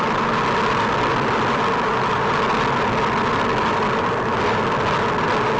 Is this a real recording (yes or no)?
yes